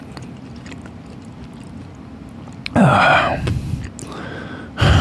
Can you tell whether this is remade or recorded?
recorded